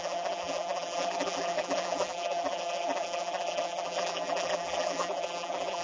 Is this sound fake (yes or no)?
yes